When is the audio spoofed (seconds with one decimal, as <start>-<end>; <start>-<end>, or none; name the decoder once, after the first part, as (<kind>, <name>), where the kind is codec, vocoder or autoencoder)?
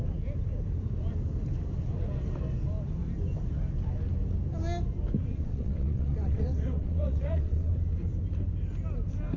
5.3-7.7 (vocoder, WaveNeXt)